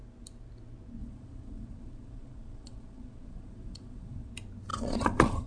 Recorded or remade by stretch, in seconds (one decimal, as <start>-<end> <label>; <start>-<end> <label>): 0.0-1.0 recorded; 1.0-4.3 remade; 4.3-4.7 recorded; 4.7-5.5 remade